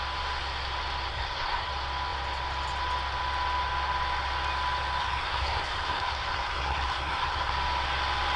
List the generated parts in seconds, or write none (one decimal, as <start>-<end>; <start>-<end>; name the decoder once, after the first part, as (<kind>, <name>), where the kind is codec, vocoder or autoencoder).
1.1-1.7 (codec, SNAC); 5.0-7.5